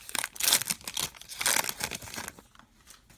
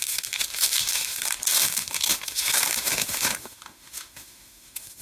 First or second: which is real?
first